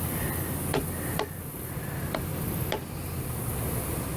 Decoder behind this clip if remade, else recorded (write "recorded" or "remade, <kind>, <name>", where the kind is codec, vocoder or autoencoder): remade, vocoder, BigVGAN v2